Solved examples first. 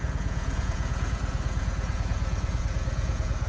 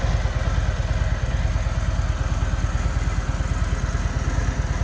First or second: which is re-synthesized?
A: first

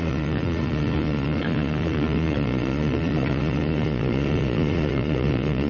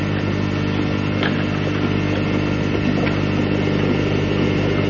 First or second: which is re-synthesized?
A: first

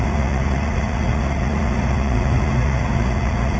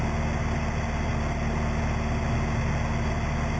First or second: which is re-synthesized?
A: first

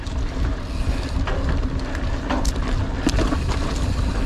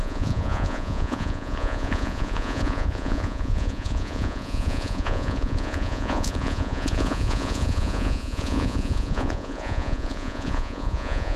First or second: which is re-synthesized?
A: second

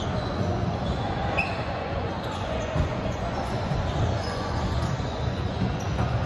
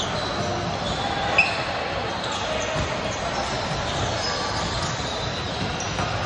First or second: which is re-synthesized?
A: first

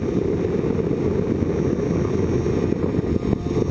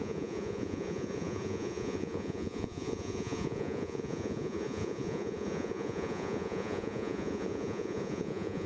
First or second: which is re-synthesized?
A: second